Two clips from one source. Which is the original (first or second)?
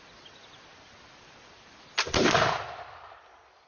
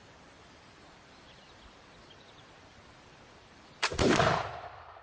first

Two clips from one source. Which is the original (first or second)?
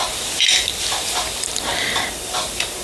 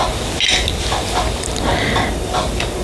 second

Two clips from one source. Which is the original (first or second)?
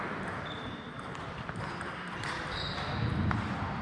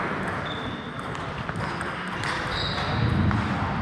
second